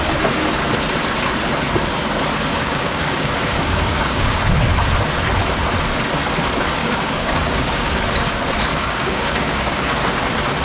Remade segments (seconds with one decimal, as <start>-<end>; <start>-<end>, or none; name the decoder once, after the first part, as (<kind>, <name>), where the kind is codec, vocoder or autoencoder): 2.5-4.4 (codec, DAC); 6.8-8.0; 8.7-9.8